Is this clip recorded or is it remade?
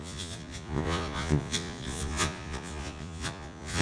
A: remade